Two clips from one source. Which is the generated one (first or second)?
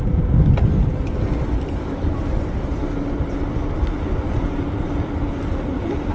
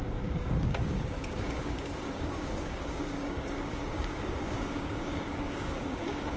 second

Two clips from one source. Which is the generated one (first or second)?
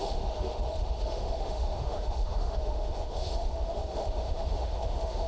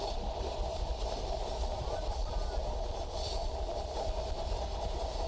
first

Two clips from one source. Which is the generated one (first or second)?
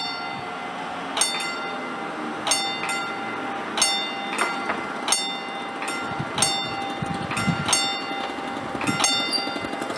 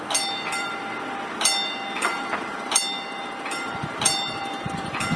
second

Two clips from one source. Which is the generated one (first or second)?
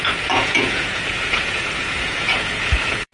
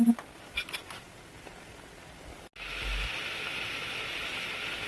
first